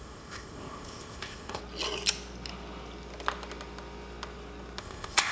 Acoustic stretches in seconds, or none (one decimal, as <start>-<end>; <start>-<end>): 1.6-4.8